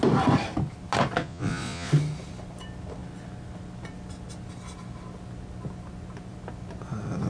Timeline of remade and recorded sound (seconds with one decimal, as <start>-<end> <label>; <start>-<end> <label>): 0.0-1.2 recorded; 1.2-1.9 remade; 1.9-7.3 recorded